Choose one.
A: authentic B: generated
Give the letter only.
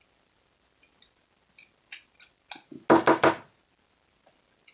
A